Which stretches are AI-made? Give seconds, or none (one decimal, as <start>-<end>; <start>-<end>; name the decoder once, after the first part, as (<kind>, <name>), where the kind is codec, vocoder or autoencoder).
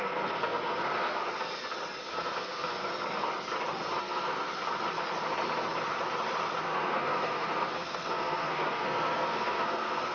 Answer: 0.0-1.2 (codec, SNAC); 2.1-2.9; 4.0-4.5; 6.6-10.1